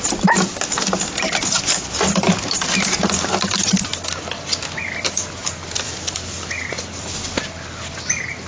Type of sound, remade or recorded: recorded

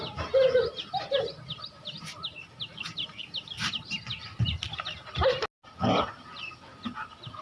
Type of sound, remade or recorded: recorded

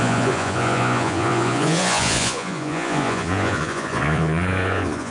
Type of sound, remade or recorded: remade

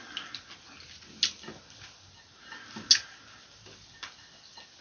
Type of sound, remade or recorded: recorded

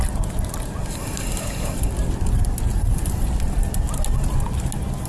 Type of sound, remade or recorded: recorded